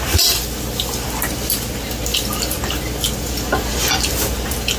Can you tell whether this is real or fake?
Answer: real